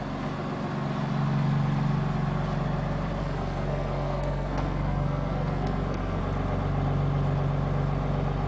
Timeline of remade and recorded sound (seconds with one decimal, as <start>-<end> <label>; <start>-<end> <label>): 0.0-3.2 recorded; 3.2-6.2 remade; 6.2-8.5 recorded